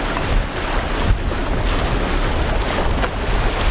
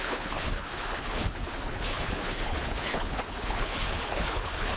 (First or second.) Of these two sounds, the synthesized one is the second